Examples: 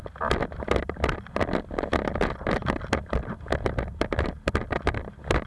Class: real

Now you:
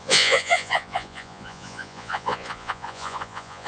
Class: fake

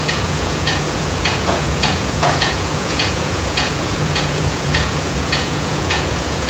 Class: fake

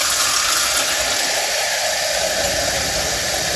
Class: real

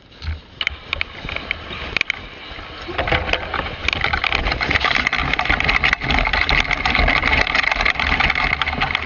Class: real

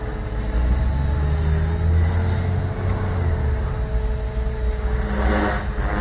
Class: real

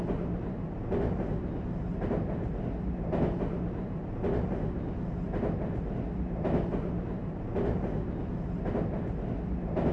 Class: real